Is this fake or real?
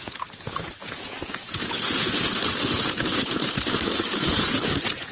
fake